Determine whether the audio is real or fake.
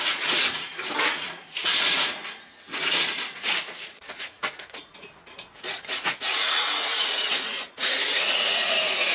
fake